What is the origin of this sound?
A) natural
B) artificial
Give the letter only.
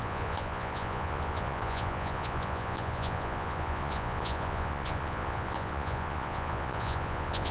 B